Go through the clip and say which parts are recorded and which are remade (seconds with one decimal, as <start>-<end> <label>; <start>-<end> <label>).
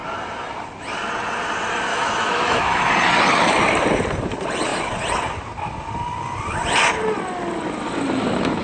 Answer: 0.0-1.9 recorded; 1.9-2.9 remade; 2.9-8.6 recorded